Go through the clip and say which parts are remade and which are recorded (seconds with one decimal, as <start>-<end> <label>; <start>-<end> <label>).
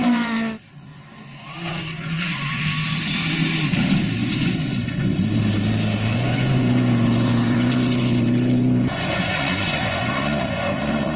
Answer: 0.0-0.9 recorded; 0.9-2.6 remade; 2.6-4.2 recorded; 4.2-5.2 remade; 5.2-6.1 recorded; 6.1-11.2 remade